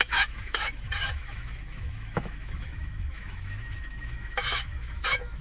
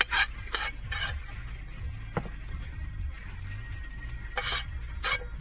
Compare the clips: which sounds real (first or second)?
second